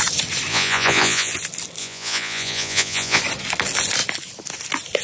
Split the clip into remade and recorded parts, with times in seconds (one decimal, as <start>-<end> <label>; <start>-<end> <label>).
0.0-0.5 recorded; 0.5-1.3 remade; 1.3-1.8 recorded; 1.8-3.2 remade; 3.2-5.0 recorded